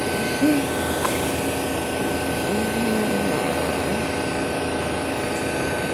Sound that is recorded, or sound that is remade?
recorded